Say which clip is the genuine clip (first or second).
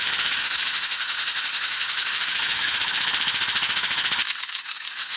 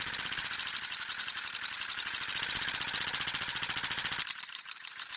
second